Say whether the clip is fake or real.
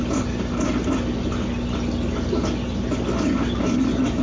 real